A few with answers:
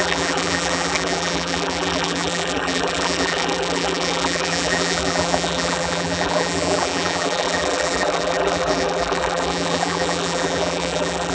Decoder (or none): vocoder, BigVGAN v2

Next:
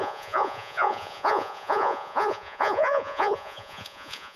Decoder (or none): vocoder, Vocos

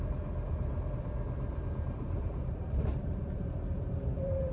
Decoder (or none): vocoder, BigVGAN v2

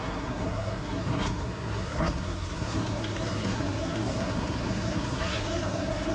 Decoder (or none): codec, SNAC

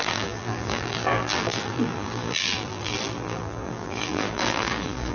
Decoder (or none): vocoder, BigVGAN v2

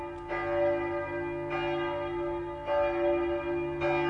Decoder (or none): none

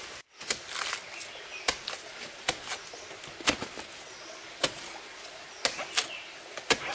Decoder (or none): none